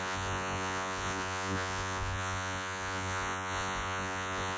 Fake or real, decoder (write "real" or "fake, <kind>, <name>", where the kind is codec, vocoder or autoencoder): fake, vocoder, Vocos